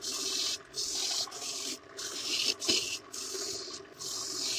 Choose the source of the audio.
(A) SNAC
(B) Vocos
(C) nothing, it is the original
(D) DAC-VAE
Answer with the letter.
C